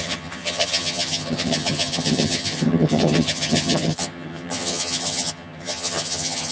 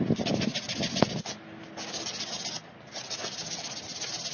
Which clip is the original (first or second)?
second